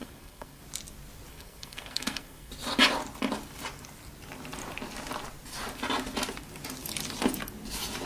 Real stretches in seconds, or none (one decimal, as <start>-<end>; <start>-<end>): 0.6-1.3; 2.5-8.1